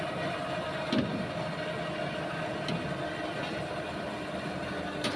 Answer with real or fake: real